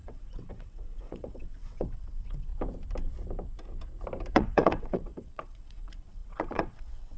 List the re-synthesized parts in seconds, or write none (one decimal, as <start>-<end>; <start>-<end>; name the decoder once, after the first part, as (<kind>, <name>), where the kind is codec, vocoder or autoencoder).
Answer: 0.0-2.5 (vocoder, WaveNeXt); 4.3-7.2